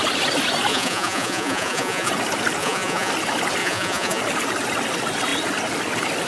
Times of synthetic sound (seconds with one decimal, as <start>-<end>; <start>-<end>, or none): 0.7-2.1; 2.6-3.1; 3.6-4.2